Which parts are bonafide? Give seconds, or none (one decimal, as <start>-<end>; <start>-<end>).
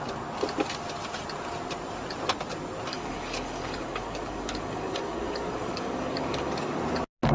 0.0-2.9; 6.8-7.3